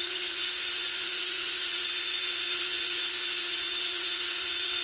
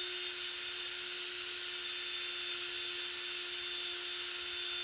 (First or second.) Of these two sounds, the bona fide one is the second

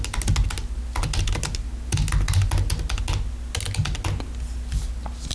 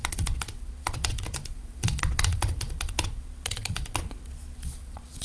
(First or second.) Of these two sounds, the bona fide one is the first